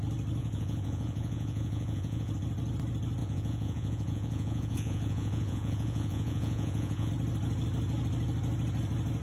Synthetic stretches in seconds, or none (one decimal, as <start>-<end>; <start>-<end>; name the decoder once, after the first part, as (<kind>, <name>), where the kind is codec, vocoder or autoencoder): 0.4-2.3 (vocoder, Vocos); 3.2-7.1